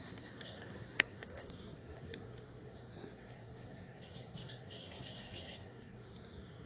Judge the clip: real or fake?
fake